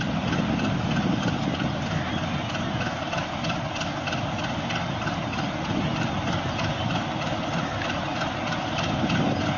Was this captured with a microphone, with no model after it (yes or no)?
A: yes